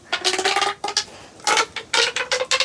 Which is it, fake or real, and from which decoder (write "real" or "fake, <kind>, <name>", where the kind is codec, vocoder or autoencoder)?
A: real